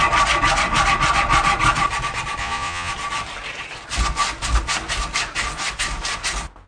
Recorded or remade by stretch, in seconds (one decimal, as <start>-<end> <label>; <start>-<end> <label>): 0.0-2.4 recorded; 2.4-2.9 remade; 2.9-6.7 recorded